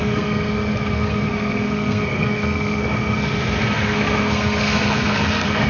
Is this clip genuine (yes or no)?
no